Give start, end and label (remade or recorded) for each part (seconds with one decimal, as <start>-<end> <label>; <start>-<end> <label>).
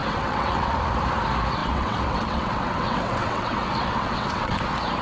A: 0.0-0.7 remade; 0.7-1.6 recorded; 1.6-4.6 remade; 4.6-5.0 recorded